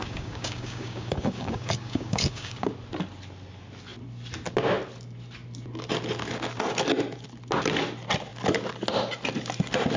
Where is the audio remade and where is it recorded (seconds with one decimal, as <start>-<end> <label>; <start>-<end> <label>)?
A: 0.0-2.7 remade; 2.7-10.0 recorded